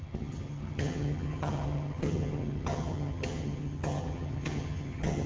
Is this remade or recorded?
remade